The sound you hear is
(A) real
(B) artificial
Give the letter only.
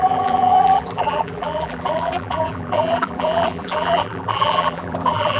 B